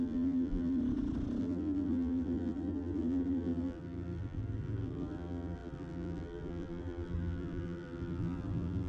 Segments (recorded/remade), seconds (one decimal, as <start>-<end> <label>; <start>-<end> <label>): 0.0-0.8 remade; 0.8-1.4 recorded; 1.4-8.9 remade